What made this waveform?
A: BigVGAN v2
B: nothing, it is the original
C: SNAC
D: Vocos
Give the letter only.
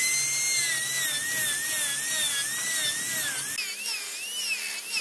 B